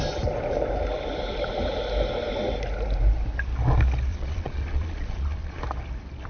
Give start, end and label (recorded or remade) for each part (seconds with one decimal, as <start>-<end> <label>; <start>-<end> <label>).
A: 0.0-4.1 recorded; 4.1-5.6 remade; 5.6-6.3 recorded